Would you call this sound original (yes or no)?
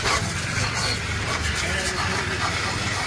yes